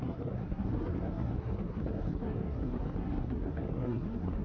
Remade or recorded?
remade